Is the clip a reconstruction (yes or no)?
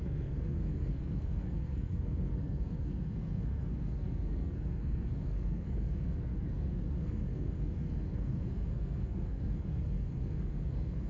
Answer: yes